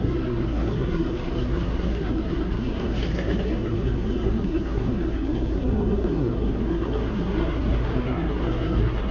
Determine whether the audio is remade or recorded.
remade